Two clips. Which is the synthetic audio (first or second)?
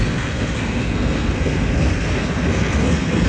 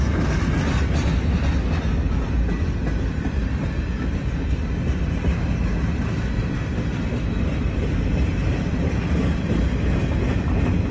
first